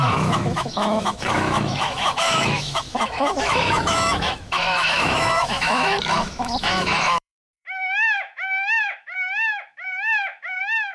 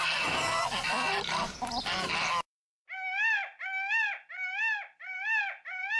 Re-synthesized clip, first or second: first